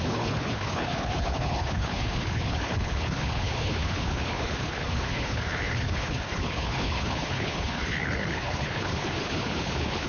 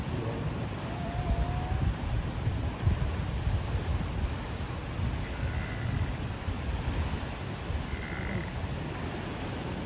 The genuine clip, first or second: second